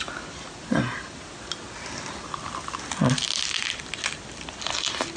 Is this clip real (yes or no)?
yes